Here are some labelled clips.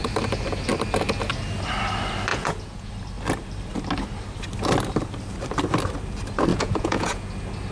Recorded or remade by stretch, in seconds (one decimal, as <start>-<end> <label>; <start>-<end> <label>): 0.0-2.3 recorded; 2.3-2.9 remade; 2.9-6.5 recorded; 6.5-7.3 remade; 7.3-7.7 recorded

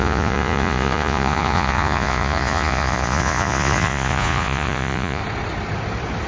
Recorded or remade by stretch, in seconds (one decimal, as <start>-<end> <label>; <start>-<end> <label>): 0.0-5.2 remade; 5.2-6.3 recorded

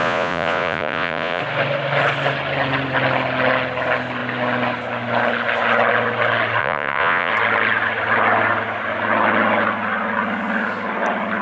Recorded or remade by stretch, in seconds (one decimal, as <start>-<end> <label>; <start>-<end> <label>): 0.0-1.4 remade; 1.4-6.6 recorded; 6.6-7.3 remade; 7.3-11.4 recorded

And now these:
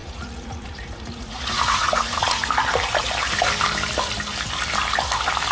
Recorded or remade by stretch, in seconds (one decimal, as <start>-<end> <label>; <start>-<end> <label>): 0.0-2.5 remade; 2.5-5.5 recorded

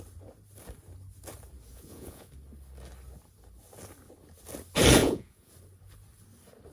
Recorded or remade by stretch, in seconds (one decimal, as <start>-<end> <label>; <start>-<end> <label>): 0.0-1.7 recorded; 1.7-2.3 remade; 2.3-5.0 recorded; 5.0-5.5 remade; 5.5-6.7 recorded